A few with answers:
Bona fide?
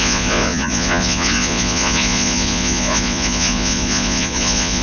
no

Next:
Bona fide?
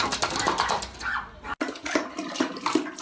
yes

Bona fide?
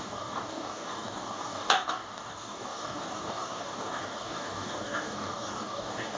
no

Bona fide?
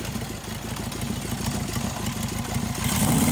yes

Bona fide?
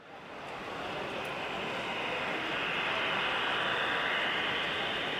yes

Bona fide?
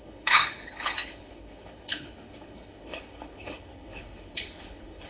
no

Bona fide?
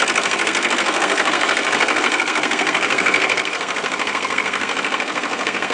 no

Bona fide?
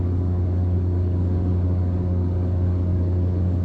no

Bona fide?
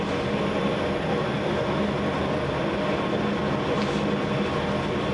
yes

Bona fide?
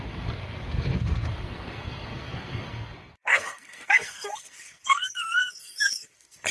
no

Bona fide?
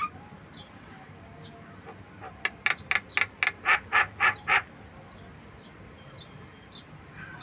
yes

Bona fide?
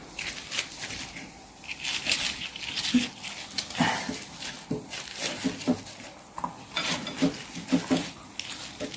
yes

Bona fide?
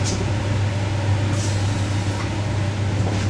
yes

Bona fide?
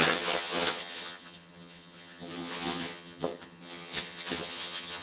no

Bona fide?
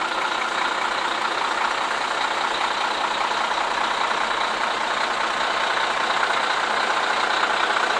yes